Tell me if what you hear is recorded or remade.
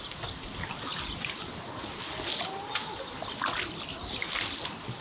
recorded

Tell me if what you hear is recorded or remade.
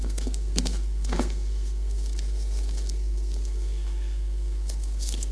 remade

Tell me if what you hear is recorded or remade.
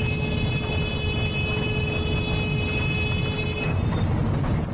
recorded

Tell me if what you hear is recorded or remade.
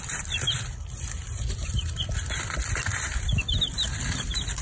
remade